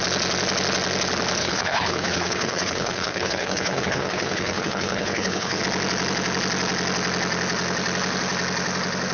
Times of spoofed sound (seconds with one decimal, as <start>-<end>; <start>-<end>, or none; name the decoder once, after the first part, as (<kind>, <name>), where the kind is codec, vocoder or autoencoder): 1.4-5.6 (codec, HILCodec)

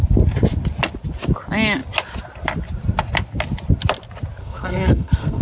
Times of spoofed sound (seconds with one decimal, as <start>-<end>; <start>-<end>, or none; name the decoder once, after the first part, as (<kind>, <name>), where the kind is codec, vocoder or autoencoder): 4.4-5.4 (codec, SNAC)

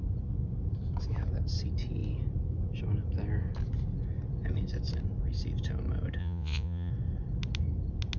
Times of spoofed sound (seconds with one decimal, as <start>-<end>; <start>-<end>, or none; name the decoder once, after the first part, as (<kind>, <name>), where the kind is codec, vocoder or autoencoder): 6.2-6.9 (vocoder, Vocos)

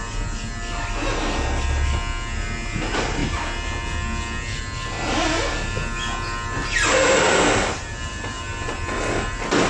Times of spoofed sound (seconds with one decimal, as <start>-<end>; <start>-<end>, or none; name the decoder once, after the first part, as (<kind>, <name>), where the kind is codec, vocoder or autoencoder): none